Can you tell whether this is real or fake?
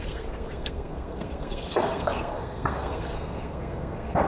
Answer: fake